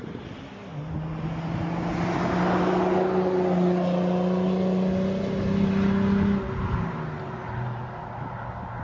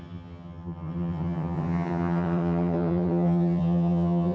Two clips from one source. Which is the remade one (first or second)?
second